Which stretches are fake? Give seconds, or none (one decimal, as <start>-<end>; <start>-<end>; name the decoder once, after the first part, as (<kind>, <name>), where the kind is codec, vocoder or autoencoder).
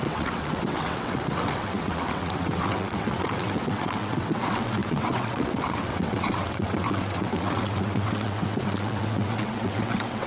0.0-10.3 (vocoder, WaveNeXt)